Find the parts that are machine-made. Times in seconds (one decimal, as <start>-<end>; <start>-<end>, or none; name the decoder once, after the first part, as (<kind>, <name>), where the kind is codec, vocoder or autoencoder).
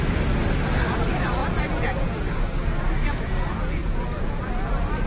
1.4-4.5 (vocoder, Vocos)